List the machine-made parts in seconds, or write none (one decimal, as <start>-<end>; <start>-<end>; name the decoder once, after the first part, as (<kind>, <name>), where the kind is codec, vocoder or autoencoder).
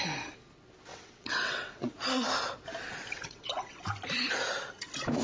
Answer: 0.9-1.9 (vocoder, WaveNeXt); 3.1-3.9